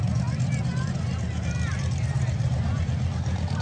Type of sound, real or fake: fake